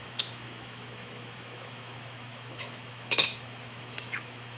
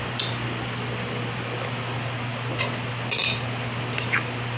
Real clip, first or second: second